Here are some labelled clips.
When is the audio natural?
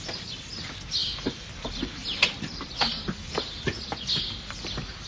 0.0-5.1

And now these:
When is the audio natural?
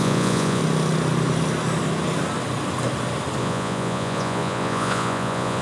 0.6-3.4